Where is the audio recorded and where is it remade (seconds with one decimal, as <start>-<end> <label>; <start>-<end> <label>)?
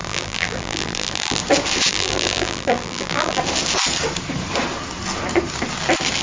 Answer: 0.0-1.4 remade; 1.4-1.9 recorded; 1.9-3.4 remade; 3.4-6.2 recorded